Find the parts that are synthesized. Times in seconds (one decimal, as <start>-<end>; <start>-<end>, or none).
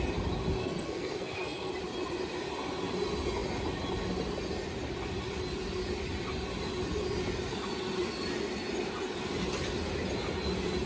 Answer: 0.6-1.7